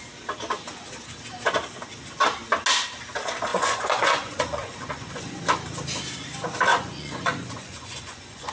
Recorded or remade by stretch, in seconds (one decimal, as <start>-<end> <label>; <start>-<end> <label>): 0.0-3.5 recorded; 3.5-5.4 remade; 5.4-6.7 recorded; 6.7-8.5 remade